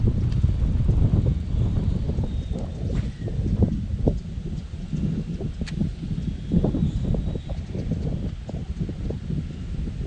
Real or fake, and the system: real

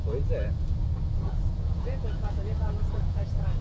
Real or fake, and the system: fake, vocoder, Vocos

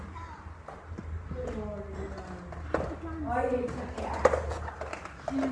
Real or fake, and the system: real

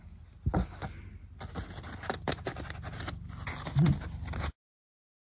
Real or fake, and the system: real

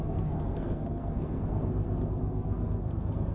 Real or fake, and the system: fake, codec, SNAC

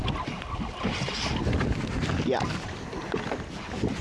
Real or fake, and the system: real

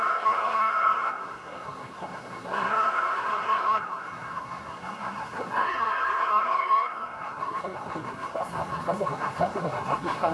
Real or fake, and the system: fake, codec, SNAC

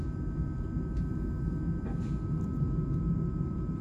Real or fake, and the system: real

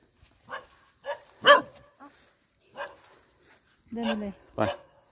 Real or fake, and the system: real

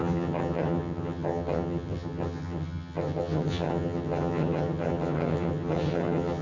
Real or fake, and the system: fake, vocoder, HiFi-GAN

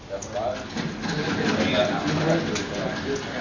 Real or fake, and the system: real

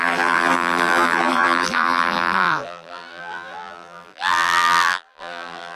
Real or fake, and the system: fake, vocoder, BigVGAN v2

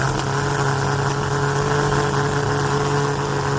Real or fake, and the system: real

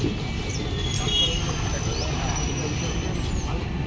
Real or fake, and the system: real